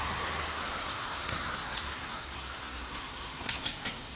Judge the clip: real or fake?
fake